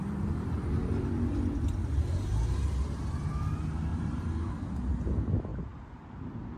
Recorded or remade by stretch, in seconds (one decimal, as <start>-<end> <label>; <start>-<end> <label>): 0.0-0.8 remade; 0.8-1.8 recorded; 1.8-3.3 remade; 3.3-3.9 recorded; 3.9-4.4 remade; 4.4-6.6 recorded